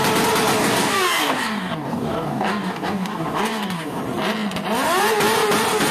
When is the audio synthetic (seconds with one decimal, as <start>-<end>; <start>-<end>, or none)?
0.6-4.0